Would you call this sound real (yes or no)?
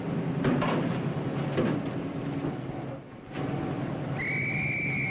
yes